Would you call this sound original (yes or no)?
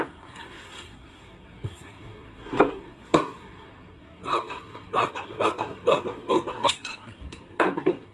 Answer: no